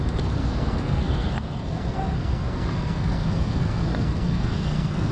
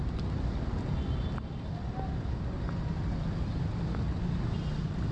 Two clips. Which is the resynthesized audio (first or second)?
first